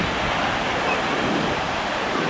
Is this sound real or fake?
real